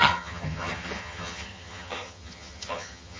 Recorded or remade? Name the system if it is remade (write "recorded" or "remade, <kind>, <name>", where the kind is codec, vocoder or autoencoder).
remade, vocoder, HiFi-GAN